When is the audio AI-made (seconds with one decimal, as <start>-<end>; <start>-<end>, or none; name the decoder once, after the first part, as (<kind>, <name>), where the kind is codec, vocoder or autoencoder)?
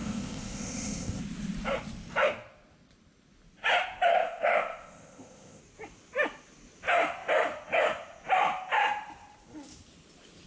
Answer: 0.0-1.2 (codec, ZipCodec); 4.1-5.6